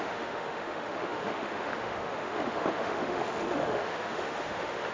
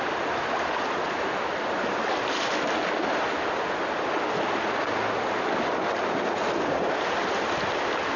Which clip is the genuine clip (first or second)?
second